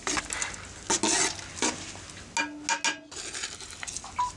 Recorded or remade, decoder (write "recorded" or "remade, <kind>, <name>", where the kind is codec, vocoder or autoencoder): recorded